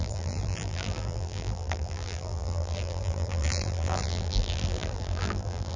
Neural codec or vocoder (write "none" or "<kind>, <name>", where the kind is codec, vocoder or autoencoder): vocoder, BigVGAN v2